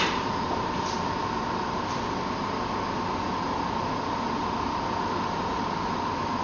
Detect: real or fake real